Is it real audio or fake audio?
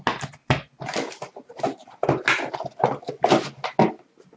real